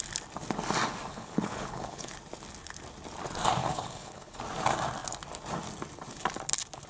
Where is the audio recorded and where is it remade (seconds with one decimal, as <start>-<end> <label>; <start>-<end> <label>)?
0.0-1.1 recorded; 1.1-2.1 remade; 2.1-3.6 recorded; 3.6-4.4 remade; 4.4-6.9 recorded